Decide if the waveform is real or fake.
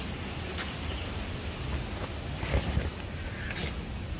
real